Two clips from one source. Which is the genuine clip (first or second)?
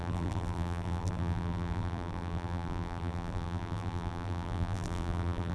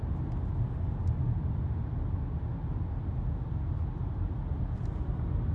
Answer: second